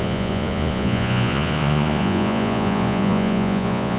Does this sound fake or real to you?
fake